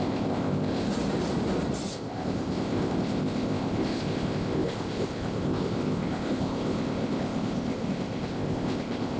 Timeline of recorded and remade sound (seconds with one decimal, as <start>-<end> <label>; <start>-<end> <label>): 0.0-0.9 remade; 0.9-1.9 recorded; 1.9-9.2 remade